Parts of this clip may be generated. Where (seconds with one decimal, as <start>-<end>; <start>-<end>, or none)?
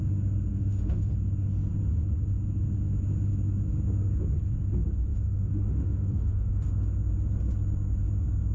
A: 0.5-1.1; 5.1-6.7